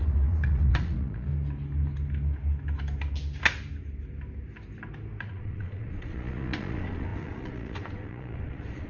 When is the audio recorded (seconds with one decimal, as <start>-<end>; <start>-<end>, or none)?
1.3-5.2